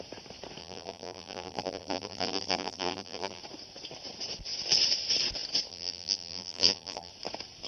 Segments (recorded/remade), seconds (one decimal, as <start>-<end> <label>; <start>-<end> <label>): 0.0-0.6 recorded; 0.6-3.4 remade; 3.4-5.7 recorded; 5.7-7.1 remade; 7.1-7.7 recorded

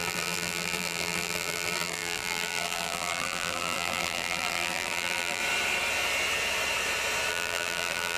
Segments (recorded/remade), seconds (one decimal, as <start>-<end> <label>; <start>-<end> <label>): 0.0-5.4 remade; 5.4-7.3 recorded; 7.3-8.2 remade

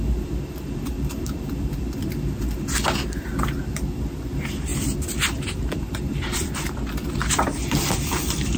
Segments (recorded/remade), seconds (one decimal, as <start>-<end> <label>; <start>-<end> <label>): 0.0-8.6 remade

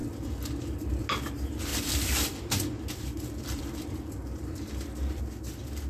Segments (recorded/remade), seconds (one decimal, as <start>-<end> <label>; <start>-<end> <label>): 0.0-0.9 remade; 0.9-1.7 recorded; 1.7-5.2 remade; 5.2-5.9 recorded

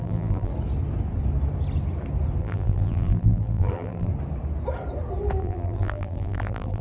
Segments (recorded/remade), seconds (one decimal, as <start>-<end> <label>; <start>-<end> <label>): 0.0-0.5 remade; 0.5-2.4 recorded; 2.4-4.1 remade; 4.1-5.4 recorded; 5.4-6.8 remade